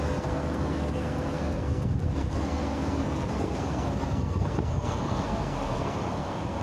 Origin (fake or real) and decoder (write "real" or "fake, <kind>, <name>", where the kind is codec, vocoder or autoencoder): fake, codec, SNAC